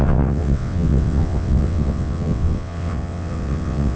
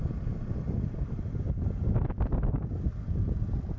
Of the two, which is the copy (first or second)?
first